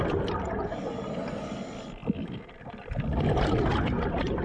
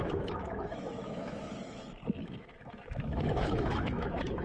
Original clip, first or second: first